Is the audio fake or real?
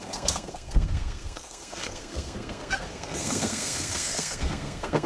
fake